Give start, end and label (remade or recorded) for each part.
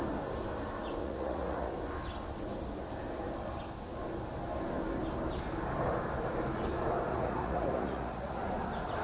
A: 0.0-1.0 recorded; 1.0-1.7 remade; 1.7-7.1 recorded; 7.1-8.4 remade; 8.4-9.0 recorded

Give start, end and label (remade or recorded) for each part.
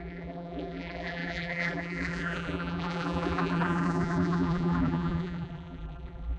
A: 0.0-6.4 remade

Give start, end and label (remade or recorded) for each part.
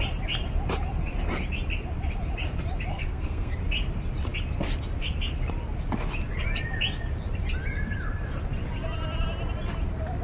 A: 0.0-2.9 recorded; 2.9-3.5 remade; 3.5-10.2 recorded